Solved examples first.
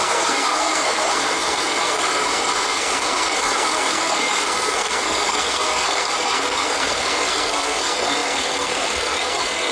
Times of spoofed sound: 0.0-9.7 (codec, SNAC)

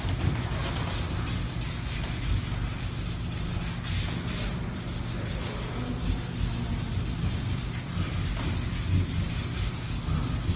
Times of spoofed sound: none

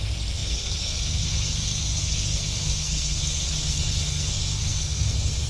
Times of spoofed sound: 0.0-5.5 (codec, SNAC)

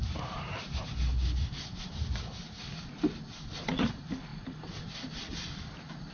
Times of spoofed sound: 0.0-0.7 (vocoder, BigVGAN v2)